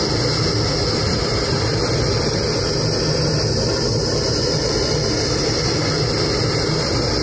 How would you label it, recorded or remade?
recorded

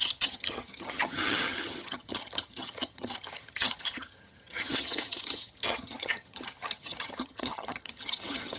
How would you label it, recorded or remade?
remade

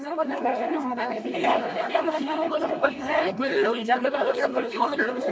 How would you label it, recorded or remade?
remade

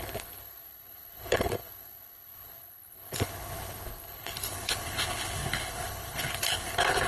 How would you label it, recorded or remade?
remade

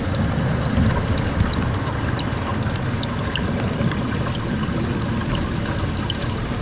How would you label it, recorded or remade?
recorded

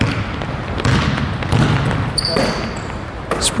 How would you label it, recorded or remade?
remade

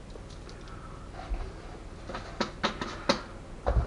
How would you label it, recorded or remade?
recorded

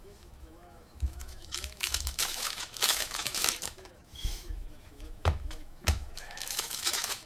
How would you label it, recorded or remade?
remade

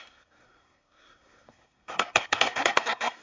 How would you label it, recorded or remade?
remade